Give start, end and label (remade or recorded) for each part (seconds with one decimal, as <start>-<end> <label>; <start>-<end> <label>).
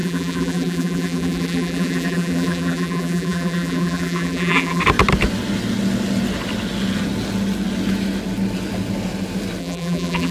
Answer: 0.0-4.8 remade; 4.8-9.6 recorded; 9.6-10.3 remade